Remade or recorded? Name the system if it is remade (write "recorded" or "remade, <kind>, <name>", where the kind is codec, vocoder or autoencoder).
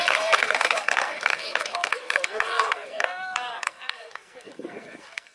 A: remade, codec, SNAC